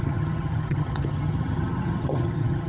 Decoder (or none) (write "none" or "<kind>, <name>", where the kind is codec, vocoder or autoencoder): vocoder, HiFi-GAN